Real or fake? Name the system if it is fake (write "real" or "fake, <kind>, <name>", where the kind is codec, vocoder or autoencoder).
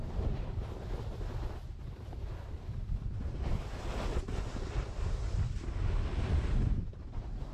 real